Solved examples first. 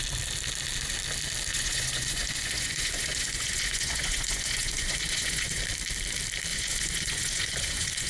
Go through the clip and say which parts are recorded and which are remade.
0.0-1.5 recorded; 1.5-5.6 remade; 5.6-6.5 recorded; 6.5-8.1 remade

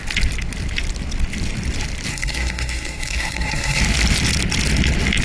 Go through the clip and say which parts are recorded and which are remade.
0.0-2.1 recorded; 2.1-3.8 remade; 3.8-5.2 recorded

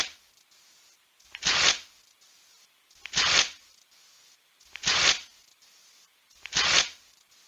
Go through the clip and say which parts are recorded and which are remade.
0.0-2.6 recorded; 2.6-6.5 remade; 6.5-7.5 recorded